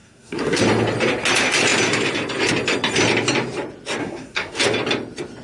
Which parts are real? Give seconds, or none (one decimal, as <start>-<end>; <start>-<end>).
0.6-4.0; 4.6-5.4